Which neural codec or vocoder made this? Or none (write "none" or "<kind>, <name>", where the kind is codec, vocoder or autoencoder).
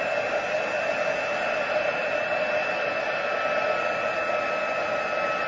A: none